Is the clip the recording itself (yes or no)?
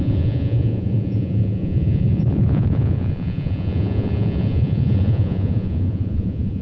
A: no